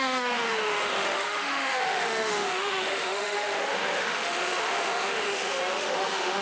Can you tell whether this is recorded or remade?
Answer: remade